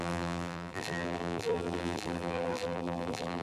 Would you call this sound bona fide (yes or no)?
no